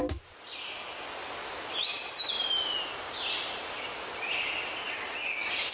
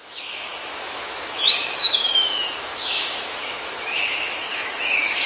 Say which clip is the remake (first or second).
second